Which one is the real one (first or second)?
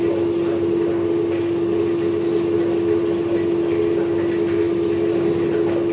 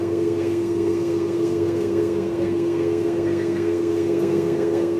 first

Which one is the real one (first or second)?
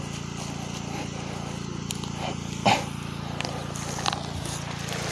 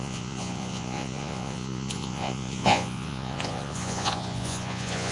first